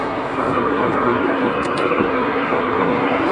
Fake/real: fake